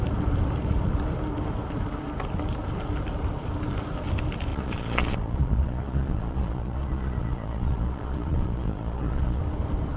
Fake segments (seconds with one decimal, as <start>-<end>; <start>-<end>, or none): 4.5-9.4